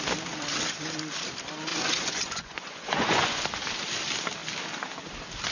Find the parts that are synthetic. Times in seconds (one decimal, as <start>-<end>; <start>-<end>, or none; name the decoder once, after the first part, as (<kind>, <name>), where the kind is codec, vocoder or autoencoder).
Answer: 1.7-3.4 (vocoder, Vocos)